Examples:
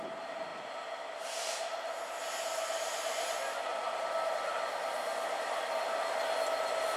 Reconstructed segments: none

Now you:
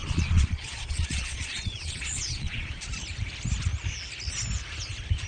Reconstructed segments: 0.0-2.8 (vocoder, Vocos)